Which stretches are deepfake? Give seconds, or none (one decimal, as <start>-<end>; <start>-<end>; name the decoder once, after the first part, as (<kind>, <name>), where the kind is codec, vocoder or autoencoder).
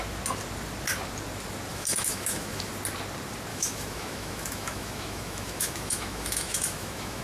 1.7-2.7 (autoencoder, DAC-VAE); 3.5-7.2